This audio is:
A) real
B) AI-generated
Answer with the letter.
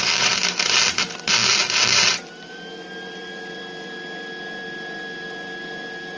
A